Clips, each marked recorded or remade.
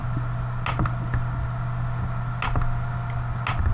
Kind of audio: recorded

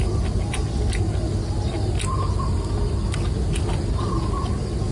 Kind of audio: recorded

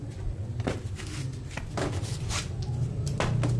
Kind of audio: recorded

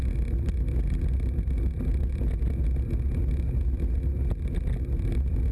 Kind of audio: recorded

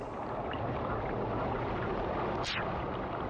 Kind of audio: recorded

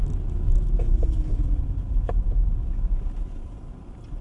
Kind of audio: recorded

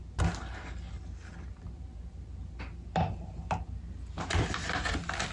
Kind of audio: recorded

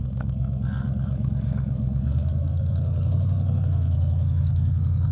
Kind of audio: remade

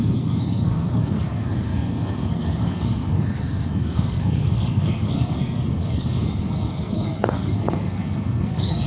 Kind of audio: remade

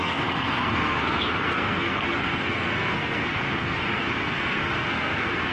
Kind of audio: remade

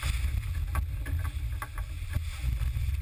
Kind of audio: recorded